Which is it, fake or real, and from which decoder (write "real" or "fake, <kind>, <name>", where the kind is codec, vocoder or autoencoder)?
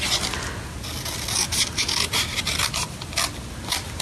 real